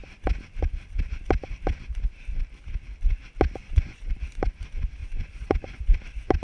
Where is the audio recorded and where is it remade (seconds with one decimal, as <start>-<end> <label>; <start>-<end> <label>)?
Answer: 0.0-3.6 recorded; 3.6-4.2 remade; 4.2-5.0 recorded; 5.0-6.0 remade; 6.0-6.4 recorded